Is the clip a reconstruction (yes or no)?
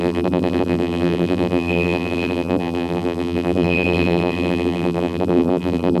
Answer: yes